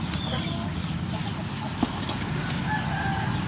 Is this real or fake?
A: real